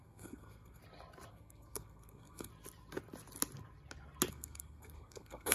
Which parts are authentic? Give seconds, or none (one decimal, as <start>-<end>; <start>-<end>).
0.8-1.3; 2.5-4.3